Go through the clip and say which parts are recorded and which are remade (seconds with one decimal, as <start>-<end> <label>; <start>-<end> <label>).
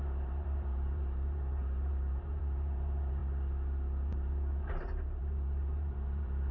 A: 0.0-3.2 remade; 3.2-4.1 recorded; 4.1-6.5 remade